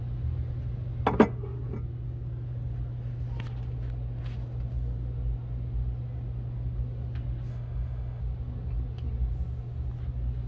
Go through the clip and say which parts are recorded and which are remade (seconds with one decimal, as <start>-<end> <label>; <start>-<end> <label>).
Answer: 0.0-7.5 recorded; 7.5-8.2 remade; 8.2-10.5 recorded